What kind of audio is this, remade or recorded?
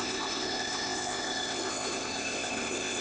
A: remade